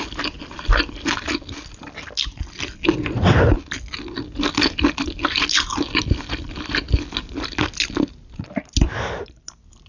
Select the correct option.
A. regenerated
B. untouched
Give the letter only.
B